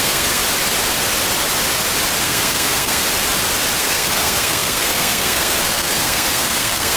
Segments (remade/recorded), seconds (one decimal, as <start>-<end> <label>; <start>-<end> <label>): 0.0-0.4 remade; 0.4-2.2 recorded; 2.2-3.0 remade; 3.0-3.8 recorded; 3.8-7.0 remade